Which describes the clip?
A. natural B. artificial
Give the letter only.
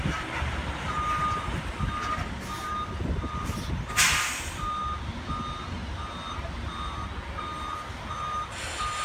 A